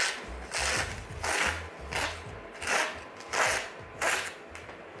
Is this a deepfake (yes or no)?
no